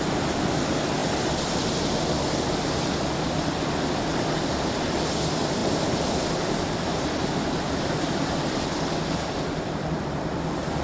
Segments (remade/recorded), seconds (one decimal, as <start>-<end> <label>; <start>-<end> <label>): 0.0-10.8 recorded